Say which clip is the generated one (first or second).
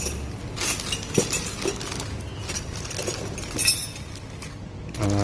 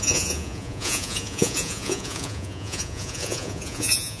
second